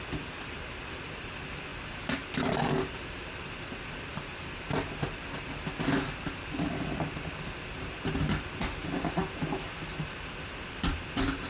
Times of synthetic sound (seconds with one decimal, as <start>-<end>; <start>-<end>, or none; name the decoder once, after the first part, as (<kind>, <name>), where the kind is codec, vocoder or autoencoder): none